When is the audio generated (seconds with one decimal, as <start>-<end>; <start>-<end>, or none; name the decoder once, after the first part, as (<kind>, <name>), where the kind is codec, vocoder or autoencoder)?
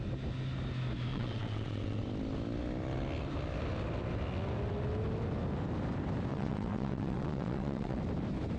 1.1-2.0 (vocoder, WaveNeXt); 6.3-8.0